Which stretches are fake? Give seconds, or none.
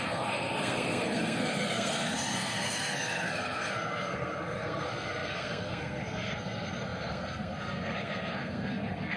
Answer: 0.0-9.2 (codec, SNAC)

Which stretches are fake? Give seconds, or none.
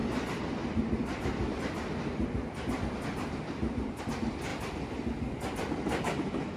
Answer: 0.0-4.0 (vocoder, BigVGAN v2)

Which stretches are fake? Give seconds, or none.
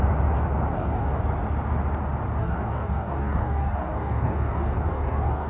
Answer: 0.7-1.2 (codec, DAC); 2.4-5.5